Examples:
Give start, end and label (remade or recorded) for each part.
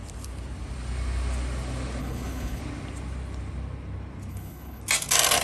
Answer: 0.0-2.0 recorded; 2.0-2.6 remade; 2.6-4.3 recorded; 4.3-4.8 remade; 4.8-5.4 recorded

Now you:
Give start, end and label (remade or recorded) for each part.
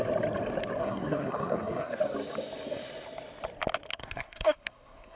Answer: 0.0-0.8 recorded; 0.8-2.0 remade; 2.0-3.9 recorded; 3.9-5.2 remade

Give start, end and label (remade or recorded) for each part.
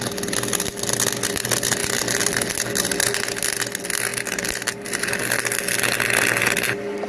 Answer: 0.0-7.1 recorded